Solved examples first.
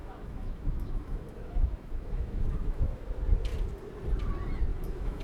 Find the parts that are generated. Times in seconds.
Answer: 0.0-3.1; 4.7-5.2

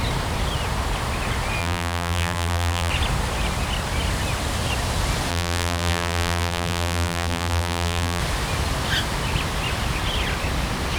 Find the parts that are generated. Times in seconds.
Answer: 1.6-2.9; 5.3-8.2